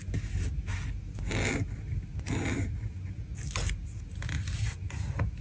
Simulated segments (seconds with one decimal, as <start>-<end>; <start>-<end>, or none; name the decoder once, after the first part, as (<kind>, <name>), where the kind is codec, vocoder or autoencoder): none